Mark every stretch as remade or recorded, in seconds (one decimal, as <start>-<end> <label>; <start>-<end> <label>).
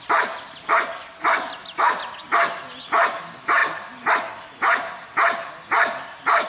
0.0-6.5 recorded